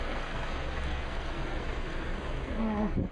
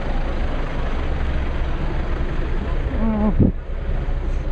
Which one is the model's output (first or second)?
first